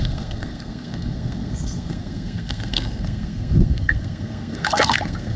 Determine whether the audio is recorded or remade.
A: remade